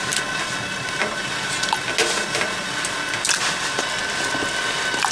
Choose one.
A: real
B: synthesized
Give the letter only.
A